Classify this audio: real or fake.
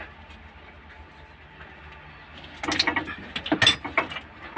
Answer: real